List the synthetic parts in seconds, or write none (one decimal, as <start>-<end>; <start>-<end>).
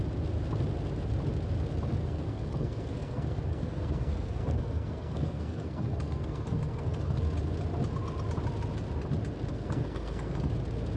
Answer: 2.0-7.2; 9.5-10.5